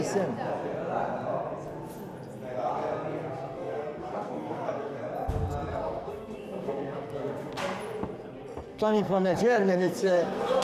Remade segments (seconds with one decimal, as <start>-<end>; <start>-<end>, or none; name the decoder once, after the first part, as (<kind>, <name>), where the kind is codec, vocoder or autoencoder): 3.3-5.0 (codec, SNAC); 5.7-7.5; 8.7-10.6